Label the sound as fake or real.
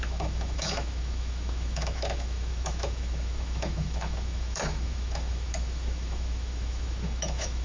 fake